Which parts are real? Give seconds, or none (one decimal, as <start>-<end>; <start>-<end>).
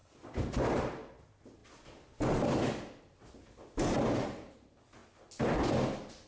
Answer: 0.0-6.3